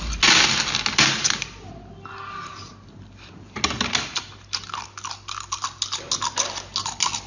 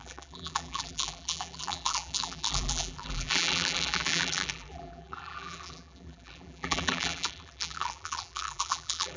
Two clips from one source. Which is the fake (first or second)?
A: second